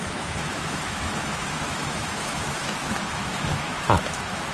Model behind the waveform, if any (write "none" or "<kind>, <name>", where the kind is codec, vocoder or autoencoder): autoencoder, DAC-VAE